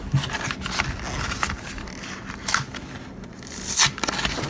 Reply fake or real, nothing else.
real